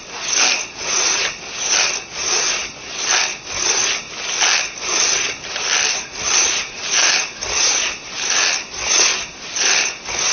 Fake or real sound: real